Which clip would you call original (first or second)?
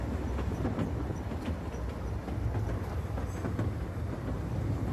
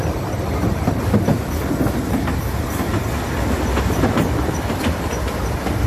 first